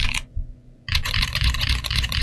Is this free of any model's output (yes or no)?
no